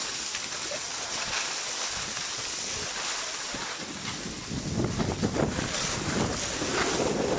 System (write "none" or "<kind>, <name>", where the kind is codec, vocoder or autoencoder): none